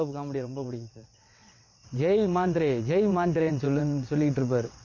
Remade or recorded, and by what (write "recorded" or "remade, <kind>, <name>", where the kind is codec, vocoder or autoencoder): remade, vocoder, WaveNeXt